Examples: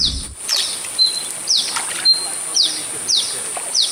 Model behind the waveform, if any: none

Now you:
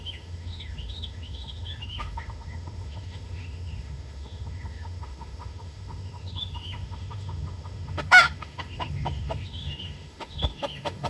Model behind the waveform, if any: autoencoder, DAC-VAE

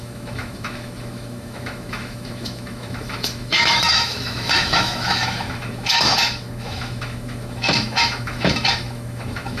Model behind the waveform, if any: autoencoder, DAC-VAE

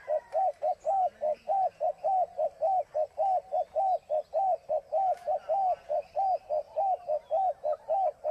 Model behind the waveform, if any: none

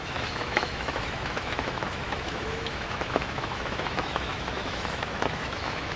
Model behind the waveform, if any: autoencoder, DAC-VAE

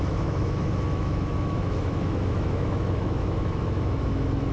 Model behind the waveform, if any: autoencoder, DAC-VAE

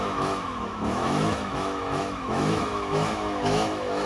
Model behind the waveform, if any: autoencoder, DAC-VAE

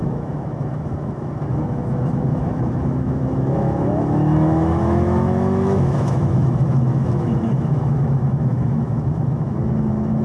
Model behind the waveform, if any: autoencoder, DAC-VAE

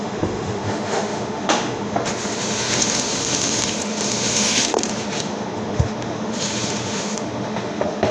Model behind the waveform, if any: autoencoder, DAC-VAE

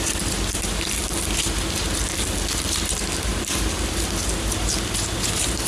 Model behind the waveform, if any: none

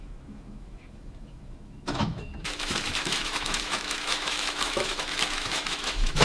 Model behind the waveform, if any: autoencoder, DAC-VAE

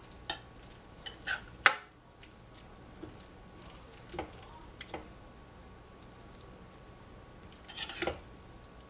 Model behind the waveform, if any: none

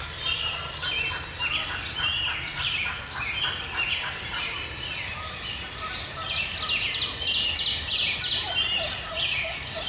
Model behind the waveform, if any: none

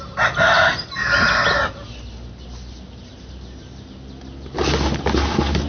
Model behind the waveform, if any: none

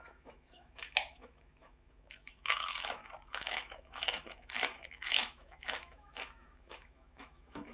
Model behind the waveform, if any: autoencoder, DAC-VAE